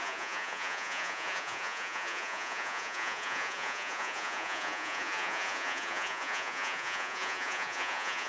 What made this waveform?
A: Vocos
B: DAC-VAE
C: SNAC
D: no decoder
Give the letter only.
A